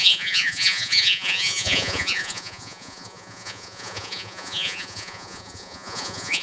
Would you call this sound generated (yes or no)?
yes